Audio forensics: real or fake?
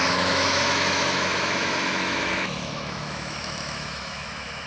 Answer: fake